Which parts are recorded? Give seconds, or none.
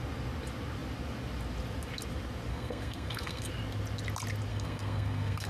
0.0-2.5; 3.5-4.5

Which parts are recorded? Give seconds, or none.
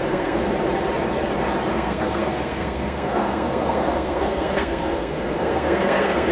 0.5-1.7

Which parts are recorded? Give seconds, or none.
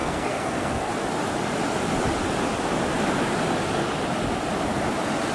0.9-5.3